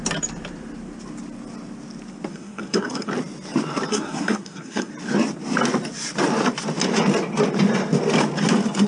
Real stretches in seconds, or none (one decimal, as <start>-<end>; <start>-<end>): 0.0-2.3; 3.1-3.9; 4.9-8.9